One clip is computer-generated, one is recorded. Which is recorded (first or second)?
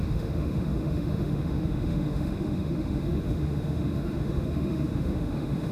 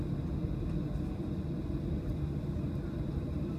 second